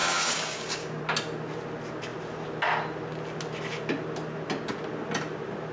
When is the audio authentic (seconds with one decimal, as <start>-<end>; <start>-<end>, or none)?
1.0-5.7